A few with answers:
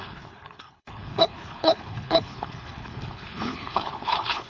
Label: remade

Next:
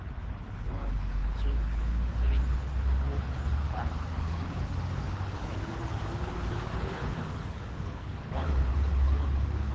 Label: remade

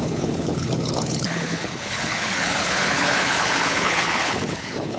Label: remade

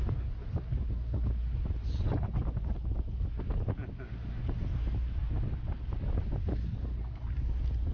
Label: recorded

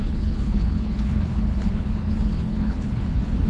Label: remade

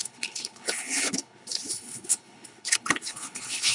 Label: remade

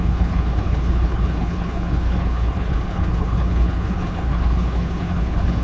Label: remade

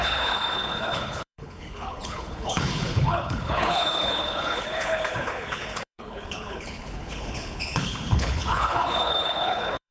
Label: remade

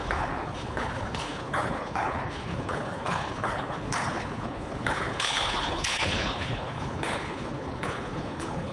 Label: remade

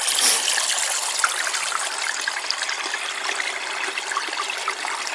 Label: recorded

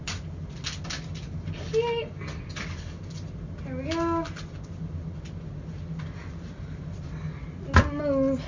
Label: recorded